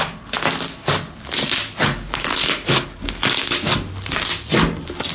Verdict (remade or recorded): recorded